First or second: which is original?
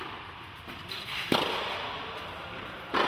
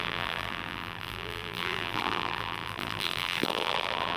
first